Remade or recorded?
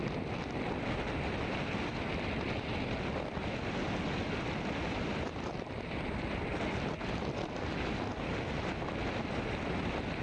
recorded